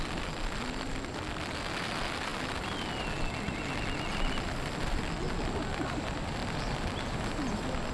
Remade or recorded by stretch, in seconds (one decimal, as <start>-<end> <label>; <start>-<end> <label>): 0.0-7.9 recorded